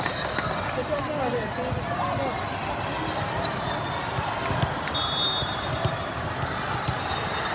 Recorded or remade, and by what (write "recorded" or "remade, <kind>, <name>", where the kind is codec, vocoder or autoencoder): recorded